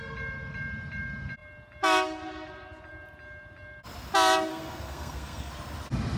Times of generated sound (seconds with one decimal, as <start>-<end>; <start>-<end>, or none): 4.5-5.5